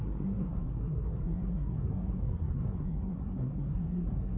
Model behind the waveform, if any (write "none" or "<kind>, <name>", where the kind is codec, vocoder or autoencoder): codec, SNAC